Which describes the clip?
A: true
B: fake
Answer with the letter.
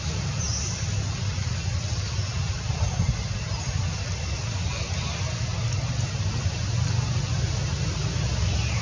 A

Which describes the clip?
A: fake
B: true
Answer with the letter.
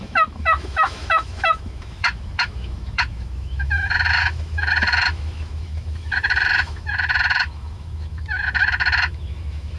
A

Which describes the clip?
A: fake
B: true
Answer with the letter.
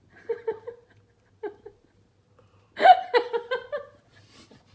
B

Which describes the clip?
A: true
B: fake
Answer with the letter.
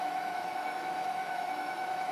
B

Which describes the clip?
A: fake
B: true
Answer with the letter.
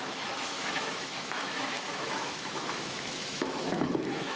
A